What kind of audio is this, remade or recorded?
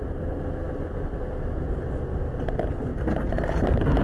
recorded